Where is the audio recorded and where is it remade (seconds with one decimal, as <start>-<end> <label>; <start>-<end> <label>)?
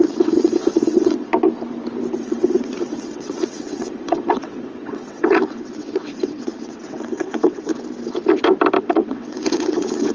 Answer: 0.0-1.3 remade; 1.3-2.2 recorded; 2.2-7.7 remade; 7.7-8.8 recorded; 8.8-10.1 remade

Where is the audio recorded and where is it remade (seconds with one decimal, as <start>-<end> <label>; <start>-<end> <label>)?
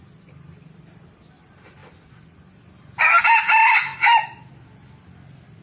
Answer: 0.0-5.6 recorded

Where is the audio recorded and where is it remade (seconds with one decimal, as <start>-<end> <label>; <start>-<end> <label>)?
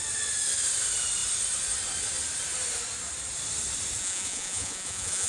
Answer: 0.0-4.0 recorded; 4.0-5.3 remade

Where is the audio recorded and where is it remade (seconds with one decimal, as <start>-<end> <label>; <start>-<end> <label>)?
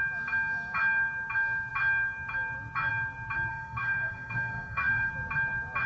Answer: 0.0-3.5 recorded; 3.5-5.1 remade; 5.1-5.9 recorded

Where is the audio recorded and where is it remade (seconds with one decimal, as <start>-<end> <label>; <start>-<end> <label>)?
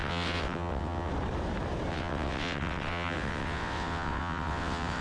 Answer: 0.0-1.1 remade; 1.1-1.9 recorded; 1.9-5.0 remade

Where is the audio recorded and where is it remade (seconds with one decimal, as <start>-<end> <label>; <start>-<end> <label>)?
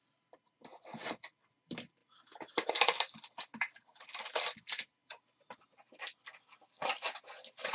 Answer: 0.0-7.7 recorded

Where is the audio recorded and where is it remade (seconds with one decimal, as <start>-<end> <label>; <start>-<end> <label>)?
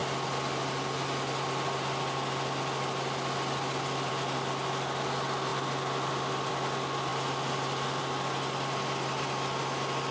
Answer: 0.0-10.1 recorded